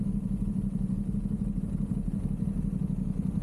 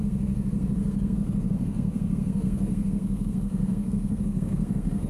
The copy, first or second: second